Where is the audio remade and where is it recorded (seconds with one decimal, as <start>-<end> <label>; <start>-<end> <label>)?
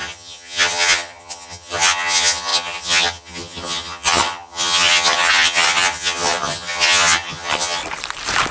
0.0-7.8 remade; 7.8-8.5 recorded